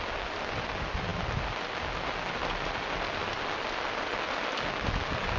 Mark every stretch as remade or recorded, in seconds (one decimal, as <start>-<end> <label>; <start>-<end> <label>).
0.0-5.4 recorded